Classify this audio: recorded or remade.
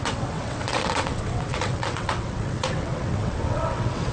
remade